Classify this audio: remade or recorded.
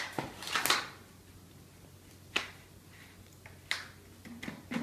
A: recorded